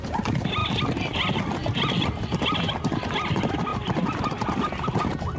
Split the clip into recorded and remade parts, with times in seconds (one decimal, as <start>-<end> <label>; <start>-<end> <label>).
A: 0.0-5.4 recorded